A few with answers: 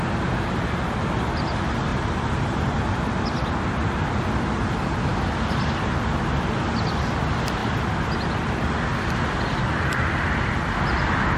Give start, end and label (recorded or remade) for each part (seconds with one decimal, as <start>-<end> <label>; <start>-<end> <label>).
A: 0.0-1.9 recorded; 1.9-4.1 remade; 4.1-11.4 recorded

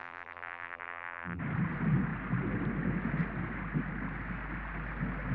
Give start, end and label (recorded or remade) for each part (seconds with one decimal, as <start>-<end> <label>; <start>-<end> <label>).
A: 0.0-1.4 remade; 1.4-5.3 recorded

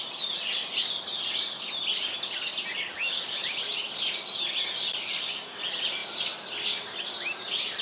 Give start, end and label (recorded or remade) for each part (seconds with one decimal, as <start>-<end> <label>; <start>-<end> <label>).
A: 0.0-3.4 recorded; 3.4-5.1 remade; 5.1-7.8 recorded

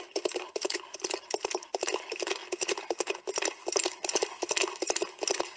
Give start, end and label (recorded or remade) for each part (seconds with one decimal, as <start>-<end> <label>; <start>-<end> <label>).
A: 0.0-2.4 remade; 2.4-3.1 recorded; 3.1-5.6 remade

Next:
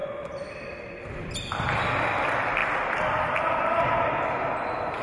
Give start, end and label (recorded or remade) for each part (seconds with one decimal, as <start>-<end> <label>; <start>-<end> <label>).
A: 0.0-1.4 remade; 1.4-5.0 recorded

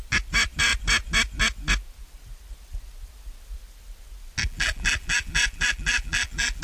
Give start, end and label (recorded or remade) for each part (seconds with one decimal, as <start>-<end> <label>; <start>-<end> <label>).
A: 0.0-4.4 recorded; 4.4-6.6 remade

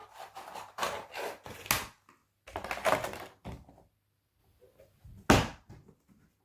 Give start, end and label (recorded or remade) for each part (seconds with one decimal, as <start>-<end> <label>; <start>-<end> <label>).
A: 0.0-1.5 remade; 1.5-6.4 recorded

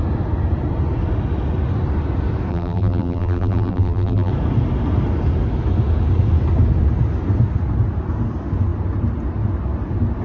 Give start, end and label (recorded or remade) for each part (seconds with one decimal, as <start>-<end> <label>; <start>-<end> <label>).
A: 0.0-2.5 recorded; 2.5-4.3 remade; 4.3-10.2 recorded